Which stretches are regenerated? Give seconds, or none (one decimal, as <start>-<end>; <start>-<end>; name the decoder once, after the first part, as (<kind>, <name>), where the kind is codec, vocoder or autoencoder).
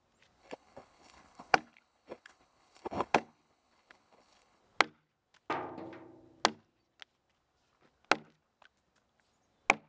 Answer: 0.4-4.6 (codec, HILCodec)